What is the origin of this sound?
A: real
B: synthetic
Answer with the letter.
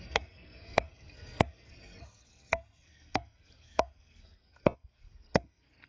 B